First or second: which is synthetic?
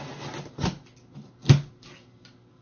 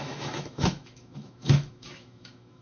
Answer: second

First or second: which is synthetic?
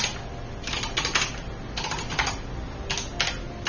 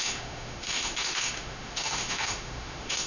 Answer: second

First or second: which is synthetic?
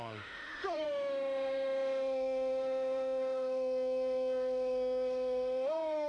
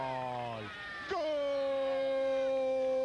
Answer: first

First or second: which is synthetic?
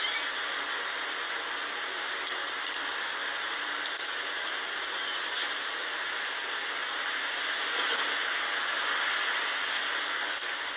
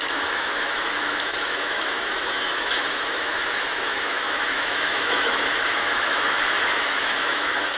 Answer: second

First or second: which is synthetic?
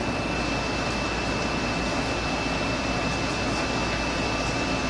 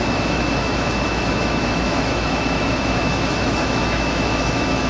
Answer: second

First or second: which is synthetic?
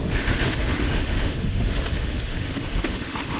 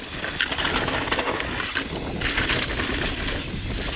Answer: first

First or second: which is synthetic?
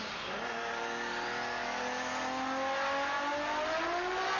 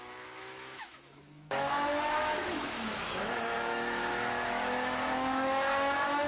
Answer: second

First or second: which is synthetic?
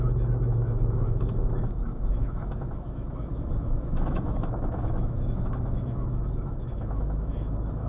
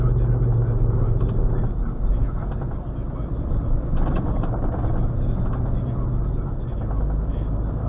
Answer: first